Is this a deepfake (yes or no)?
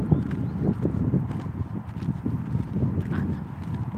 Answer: no